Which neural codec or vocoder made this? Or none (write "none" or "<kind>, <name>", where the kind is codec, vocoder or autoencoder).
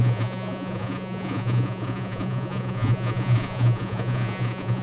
vocoder, Vocos